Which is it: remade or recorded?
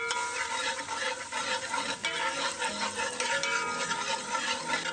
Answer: recorded